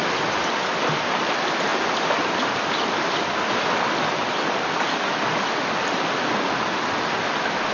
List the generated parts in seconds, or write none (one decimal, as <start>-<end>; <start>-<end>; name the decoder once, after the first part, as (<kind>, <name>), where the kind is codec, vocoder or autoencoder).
none